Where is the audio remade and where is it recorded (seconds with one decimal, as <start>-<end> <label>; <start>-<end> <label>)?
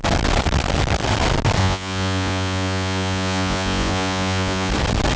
0.0-1.6 recorded; 1.6-4.7 remade; 4.7-5.2 recorded